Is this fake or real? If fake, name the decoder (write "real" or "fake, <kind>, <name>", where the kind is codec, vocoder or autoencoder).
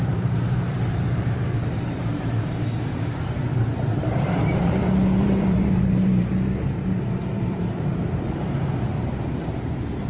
fake, vocoder, BigVGAN v2